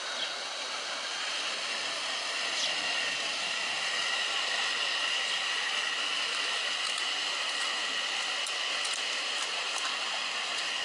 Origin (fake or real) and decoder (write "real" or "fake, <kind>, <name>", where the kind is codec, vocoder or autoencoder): real